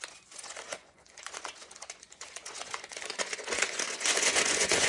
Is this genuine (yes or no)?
no